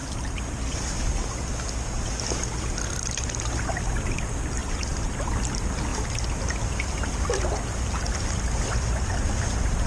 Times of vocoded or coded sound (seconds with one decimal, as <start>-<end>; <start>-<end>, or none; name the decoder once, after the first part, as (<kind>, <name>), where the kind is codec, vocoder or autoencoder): none